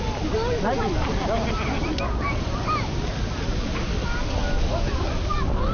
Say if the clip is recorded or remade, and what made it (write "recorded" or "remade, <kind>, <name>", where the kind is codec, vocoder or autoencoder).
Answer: recorded